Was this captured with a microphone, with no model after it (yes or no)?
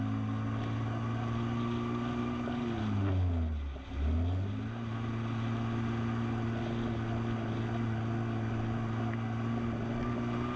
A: yes